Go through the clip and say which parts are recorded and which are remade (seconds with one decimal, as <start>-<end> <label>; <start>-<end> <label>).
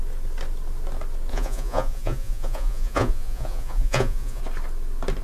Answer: 0.0-1.3 recorded; 1.3-4.4 remade; 4.4-5.2 recorded